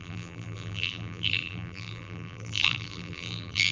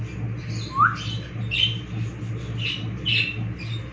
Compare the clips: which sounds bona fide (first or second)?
second